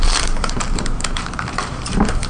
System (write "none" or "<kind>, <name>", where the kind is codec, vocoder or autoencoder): vocoder, BigVGAN v2